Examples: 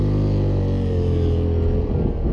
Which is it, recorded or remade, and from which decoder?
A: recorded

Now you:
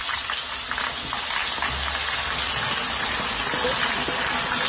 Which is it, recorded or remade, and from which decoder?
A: recorded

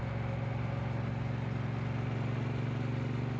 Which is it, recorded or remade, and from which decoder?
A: recorded